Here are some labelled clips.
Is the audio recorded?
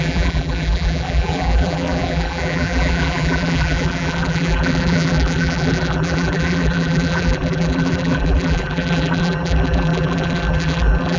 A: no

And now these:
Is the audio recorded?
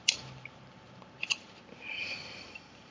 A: no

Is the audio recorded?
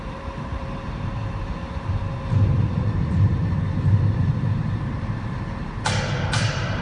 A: no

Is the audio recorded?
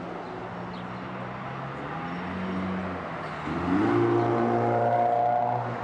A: yes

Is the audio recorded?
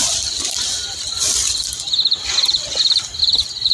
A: yes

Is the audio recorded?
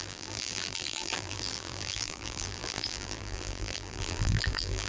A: no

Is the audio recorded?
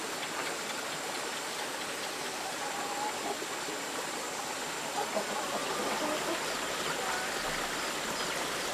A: yes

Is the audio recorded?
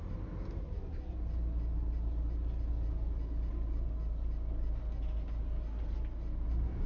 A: yes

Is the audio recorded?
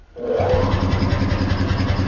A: yes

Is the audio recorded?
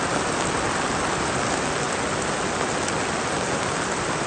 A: yes